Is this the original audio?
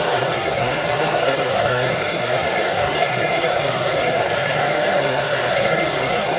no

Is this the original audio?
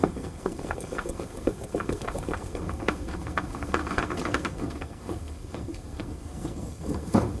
no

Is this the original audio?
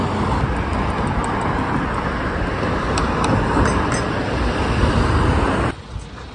yes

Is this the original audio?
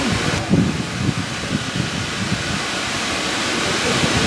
yes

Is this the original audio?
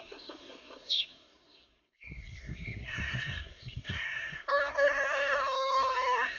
no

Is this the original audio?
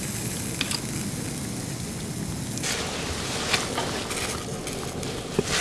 yes